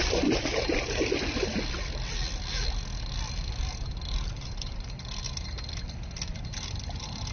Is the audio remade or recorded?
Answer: recorded